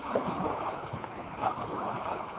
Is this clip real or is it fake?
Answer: fake